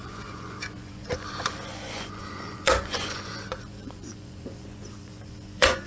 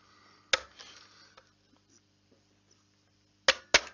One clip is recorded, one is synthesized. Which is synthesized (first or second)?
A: first